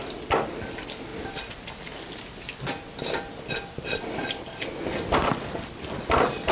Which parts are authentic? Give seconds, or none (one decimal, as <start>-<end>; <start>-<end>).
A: 0.0-6.5